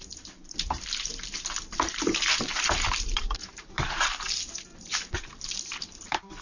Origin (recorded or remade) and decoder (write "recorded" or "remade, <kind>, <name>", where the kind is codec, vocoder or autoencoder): remade, vocoder, BigVGAN v2